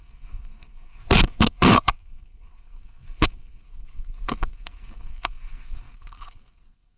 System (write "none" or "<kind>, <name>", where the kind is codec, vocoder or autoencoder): codec, SNAC